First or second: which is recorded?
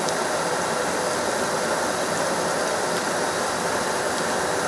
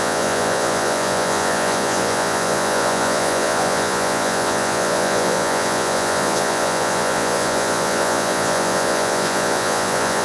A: first